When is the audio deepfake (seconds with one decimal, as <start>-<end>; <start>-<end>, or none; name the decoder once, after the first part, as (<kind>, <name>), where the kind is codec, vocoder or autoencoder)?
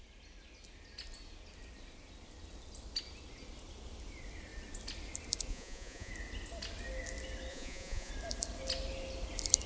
5.5-6.1 (vocoder, Vocos); 7.5-8.1